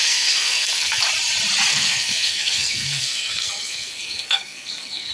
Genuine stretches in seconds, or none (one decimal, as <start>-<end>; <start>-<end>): 1.0-1.7